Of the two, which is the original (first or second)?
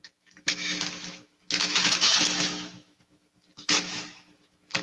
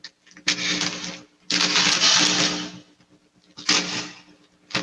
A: second